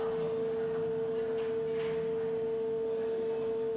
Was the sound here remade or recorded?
recorded